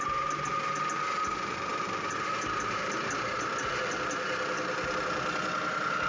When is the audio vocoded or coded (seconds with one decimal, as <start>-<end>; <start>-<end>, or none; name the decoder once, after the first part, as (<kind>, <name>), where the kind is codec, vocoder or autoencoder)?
none